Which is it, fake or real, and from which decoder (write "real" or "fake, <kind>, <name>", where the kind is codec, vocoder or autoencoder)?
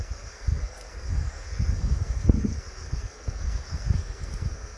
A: fake, codec, SNAC